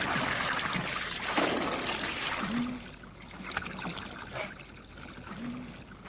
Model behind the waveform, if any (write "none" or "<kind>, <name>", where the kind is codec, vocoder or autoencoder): none